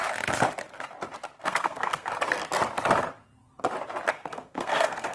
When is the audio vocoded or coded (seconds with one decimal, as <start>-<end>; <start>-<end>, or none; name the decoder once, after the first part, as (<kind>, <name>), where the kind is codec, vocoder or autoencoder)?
1.4-2.1 (codec, SNAC); 4.1-5.1